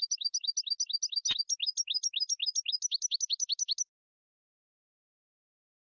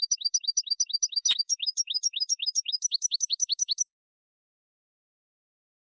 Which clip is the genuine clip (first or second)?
first